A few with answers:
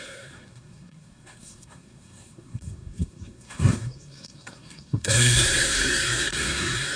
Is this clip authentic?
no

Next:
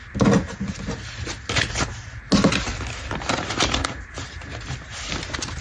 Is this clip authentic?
yes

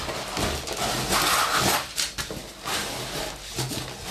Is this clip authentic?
yes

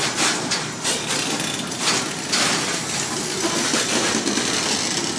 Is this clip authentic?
yes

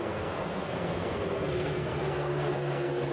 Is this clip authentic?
no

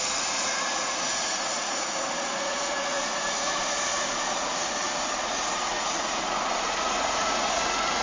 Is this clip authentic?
no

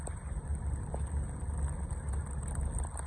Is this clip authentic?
yes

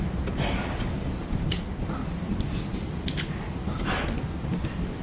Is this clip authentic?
yes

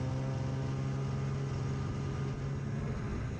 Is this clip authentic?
yes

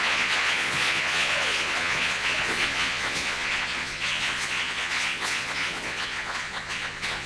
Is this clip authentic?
no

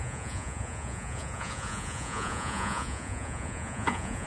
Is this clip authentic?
no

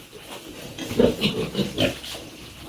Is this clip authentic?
yes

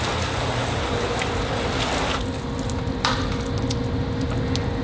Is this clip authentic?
yes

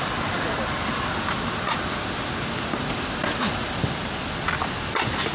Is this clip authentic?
yes